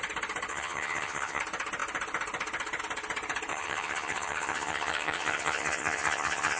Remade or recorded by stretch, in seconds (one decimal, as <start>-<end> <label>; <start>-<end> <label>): 0.0-0.5 recorded; 0.5-1.4 remade; 1.4-3.5 recorded; 3.5-6.6 remade